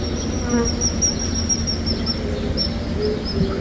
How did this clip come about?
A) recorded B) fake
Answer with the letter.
A